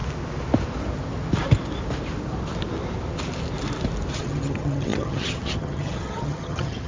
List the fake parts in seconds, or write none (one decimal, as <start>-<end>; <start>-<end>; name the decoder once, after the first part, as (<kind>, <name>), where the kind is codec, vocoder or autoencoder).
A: 4.1-6.9 (vocoder, HiFi-GAN)